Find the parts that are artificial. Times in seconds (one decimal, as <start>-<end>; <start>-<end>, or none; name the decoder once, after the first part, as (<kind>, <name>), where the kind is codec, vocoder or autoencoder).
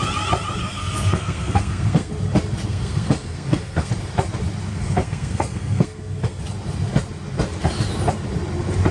0.6-2.1 (codec, SNAC); 2.7-3.9; 4.7-6.4